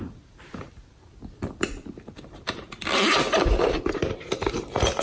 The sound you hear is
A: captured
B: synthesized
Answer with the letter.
A